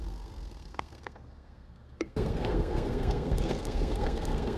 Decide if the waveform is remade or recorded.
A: remade